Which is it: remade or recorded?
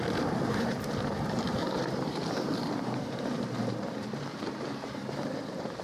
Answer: remade